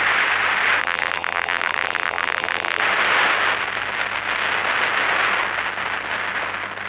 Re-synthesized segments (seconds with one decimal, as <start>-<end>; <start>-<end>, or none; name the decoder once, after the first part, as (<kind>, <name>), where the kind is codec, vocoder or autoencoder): 0.8-2.8 (vocoder, BigVGAN v2)